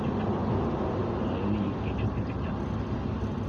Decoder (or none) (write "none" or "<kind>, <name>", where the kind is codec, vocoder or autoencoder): none